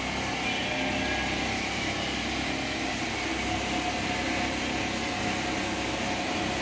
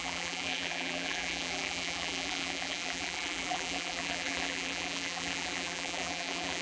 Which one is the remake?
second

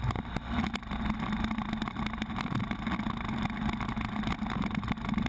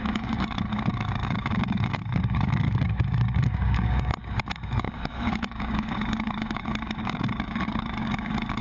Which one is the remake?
second